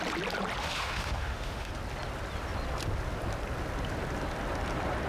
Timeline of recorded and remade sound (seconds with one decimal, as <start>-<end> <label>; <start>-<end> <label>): 0.0-0.6 recorded; 0.6-1.7 remade; 1.7-5.1 recorded